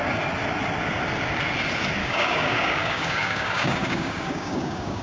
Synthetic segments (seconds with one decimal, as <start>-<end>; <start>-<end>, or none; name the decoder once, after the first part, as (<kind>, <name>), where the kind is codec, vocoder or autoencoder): 2.0-5.0 (codec, DAC)